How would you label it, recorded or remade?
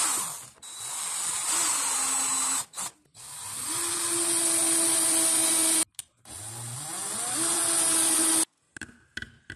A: recorded